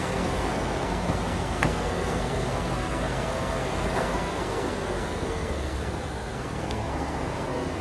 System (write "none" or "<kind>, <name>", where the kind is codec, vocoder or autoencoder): codec, SNAC